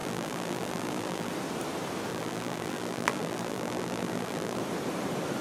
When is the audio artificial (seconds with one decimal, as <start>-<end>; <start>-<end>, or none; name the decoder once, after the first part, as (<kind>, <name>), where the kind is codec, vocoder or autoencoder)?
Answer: 0.0-1.3 (vocoder, BigVGAN v2); 2.1-4.6